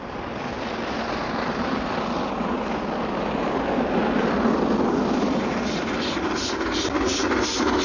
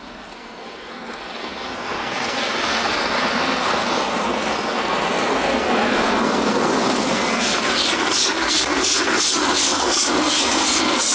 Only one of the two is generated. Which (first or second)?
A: second